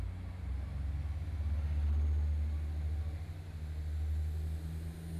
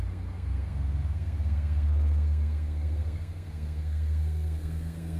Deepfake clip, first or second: second